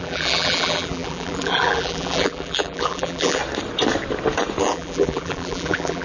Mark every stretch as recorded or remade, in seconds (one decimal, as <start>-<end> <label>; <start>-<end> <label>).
0.0-3.4 remade; 3.4-4.6 recorded; 4.6-6.0 remade